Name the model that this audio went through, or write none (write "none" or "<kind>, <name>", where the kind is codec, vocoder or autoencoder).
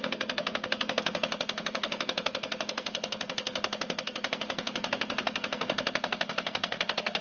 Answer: codec, SNAC